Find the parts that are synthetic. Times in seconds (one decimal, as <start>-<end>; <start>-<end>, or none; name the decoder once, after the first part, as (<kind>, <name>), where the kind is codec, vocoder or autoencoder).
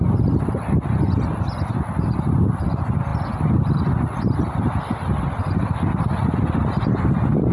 none